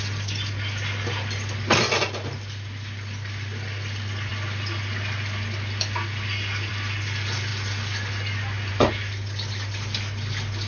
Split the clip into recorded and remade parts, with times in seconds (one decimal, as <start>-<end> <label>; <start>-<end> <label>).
0.0-10.7 recorded